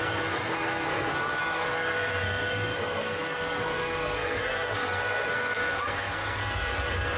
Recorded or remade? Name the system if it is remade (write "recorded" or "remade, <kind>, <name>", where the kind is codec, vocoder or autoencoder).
remade, codec, SNAC